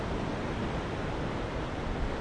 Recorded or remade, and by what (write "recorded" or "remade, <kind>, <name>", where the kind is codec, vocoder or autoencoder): recorded